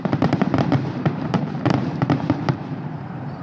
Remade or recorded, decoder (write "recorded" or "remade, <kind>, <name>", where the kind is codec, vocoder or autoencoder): remade, vocoder, BigVGAN v2